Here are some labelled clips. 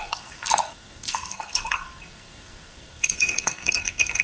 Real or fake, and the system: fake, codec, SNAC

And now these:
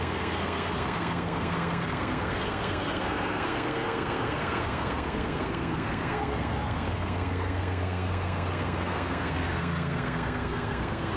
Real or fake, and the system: fake, codec, SNAC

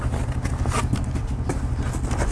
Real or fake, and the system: real